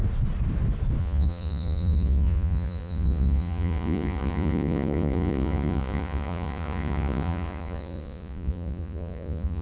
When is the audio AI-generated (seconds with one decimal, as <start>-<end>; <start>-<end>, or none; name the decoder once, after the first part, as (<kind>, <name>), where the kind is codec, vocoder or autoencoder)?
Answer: 1.0-9.6 (vocoder, Vocos)